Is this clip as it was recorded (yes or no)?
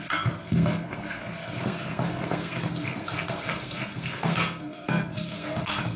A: no